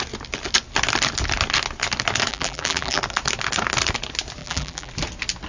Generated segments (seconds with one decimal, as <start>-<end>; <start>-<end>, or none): 2.3-3.0; 4.4-4.9